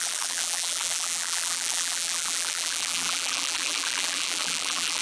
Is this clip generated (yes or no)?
yes